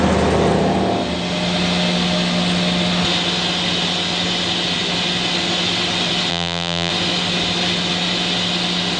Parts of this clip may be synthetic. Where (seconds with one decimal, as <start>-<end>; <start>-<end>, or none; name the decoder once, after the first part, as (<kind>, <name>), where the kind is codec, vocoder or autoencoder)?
6.3-6.9 (vocoder, BigVGAN v2)